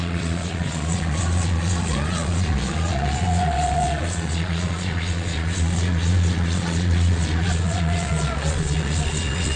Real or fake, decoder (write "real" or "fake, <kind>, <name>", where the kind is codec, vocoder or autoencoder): fake, vocoder, Vocos